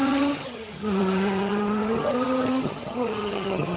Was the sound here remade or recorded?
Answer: remade